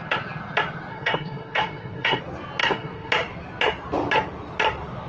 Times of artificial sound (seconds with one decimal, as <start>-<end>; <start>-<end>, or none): 0.9-2.2; 2.6-3.1